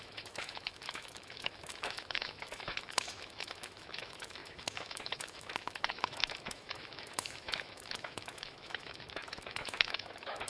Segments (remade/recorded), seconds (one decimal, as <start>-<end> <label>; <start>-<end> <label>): 0.0-10.5 remade